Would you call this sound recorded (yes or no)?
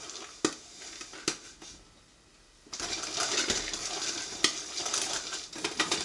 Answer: yes